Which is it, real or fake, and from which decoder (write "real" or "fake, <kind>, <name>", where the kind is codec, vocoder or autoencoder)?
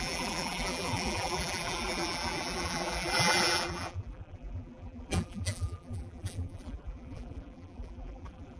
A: fake, vocoder, BigVGAN v2